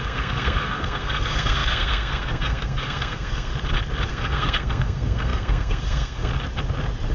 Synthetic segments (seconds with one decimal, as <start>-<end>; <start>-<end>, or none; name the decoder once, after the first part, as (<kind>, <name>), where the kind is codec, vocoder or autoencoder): 0.0-3.5 (codec, SNAC); 4.1-6.3